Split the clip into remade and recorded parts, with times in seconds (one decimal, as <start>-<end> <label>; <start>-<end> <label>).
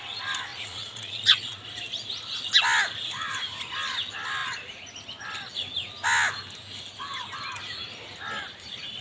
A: 0.0-0.5 recorded; 0.5-1.6 remade; 1.6-9.0 recorded